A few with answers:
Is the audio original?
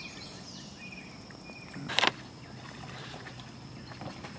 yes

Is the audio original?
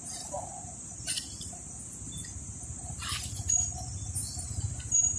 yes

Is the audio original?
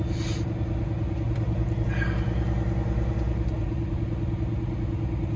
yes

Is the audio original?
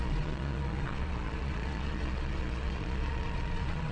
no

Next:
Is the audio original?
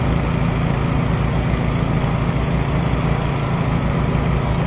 yes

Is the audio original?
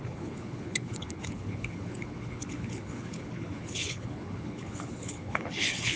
no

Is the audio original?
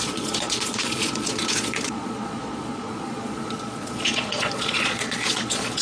no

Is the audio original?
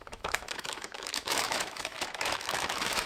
no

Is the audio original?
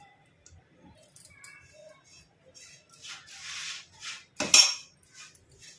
yes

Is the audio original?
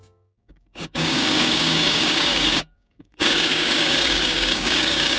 no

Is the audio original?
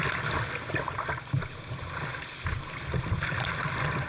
yes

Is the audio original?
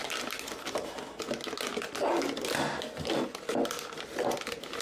yes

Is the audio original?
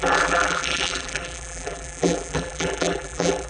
no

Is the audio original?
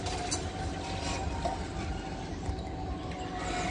yes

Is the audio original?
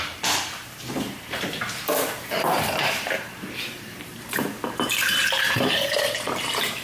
no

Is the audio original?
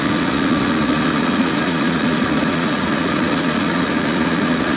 no